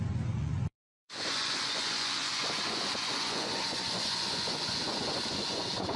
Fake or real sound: fake